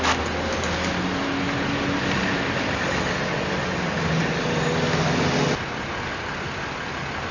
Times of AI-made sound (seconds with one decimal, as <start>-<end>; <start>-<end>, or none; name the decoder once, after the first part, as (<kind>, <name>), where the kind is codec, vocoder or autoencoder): none

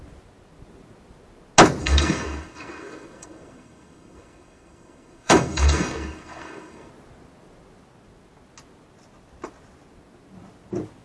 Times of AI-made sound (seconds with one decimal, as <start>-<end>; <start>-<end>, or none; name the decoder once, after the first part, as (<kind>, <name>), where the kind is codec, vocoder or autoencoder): 1.8-6.9 (codec, SNAC)